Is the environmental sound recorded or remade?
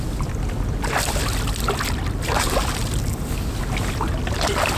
recorded